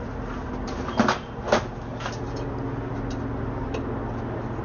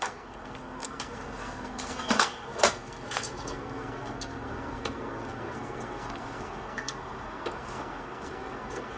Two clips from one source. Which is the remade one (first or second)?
second